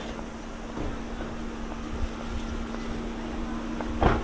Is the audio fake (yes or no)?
no